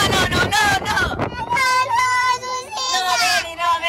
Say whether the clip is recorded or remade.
remade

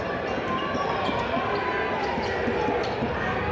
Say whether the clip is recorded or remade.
recorded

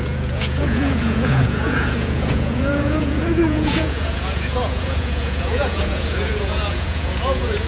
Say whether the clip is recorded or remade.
remade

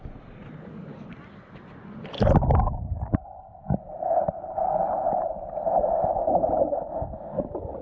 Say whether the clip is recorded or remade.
recorded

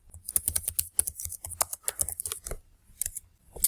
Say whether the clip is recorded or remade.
recorded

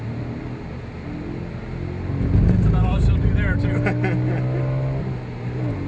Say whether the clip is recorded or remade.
recorded